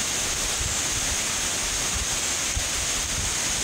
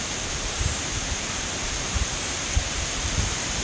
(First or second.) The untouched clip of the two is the first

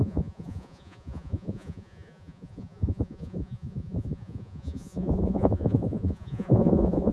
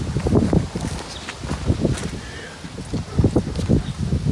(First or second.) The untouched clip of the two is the second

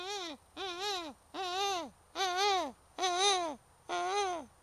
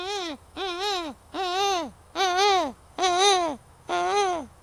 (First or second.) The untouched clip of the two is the first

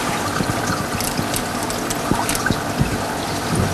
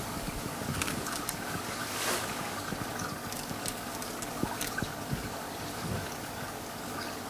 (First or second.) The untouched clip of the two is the first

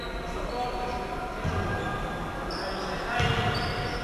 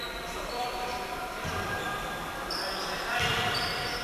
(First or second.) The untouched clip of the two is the first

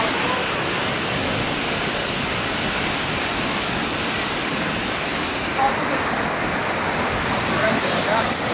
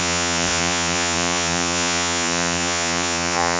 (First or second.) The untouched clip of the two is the first